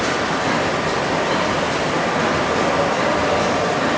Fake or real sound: real